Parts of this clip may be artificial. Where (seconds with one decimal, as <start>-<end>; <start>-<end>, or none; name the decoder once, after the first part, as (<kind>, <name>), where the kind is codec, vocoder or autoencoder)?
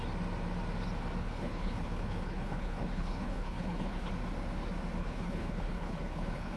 1.2-4.1 (codec, HILCodec); 5.0-6.6